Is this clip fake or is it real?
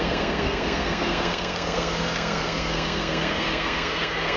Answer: fake